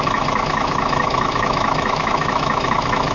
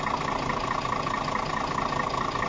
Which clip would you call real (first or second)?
second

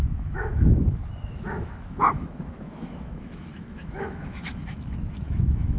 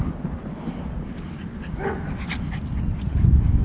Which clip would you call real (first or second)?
second